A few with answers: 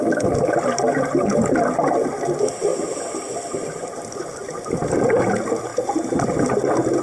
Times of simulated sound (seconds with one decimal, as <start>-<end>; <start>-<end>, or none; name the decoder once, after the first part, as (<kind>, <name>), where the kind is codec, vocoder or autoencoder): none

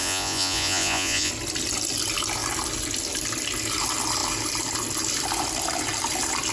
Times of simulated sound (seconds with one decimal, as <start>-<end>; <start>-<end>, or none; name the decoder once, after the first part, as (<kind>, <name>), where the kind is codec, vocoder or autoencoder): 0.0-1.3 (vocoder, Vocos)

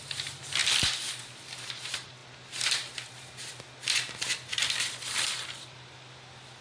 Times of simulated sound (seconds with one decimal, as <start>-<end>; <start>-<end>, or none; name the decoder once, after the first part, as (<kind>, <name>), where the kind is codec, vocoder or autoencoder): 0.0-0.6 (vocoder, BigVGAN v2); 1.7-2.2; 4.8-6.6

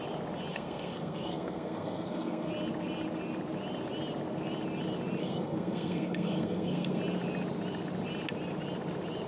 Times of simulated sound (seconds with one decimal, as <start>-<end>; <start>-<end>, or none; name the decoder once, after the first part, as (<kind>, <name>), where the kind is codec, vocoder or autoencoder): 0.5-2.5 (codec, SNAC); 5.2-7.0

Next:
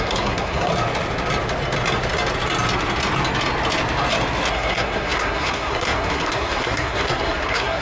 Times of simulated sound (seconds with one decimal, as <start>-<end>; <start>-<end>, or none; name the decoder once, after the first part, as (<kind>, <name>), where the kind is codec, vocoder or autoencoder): 0.0-0.7 (codec, SNAC); 4.5-7.8

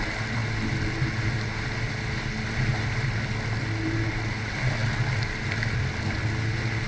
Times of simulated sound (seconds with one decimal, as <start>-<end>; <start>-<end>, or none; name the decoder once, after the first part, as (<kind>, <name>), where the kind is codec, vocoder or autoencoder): none